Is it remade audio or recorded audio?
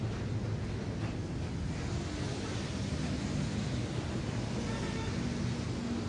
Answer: recorded